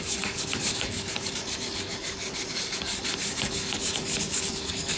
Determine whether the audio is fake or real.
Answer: fake